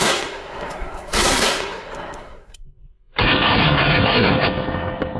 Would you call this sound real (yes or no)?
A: no